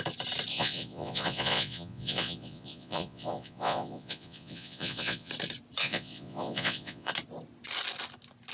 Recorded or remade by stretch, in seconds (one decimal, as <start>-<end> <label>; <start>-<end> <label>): 0.0-0.5 recorded; 0.5-5.3 remade; 5.3-5.8 recorded; 5.8-7.1 remade; 7.1-8.5 recorded